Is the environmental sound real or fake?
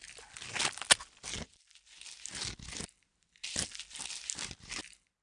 real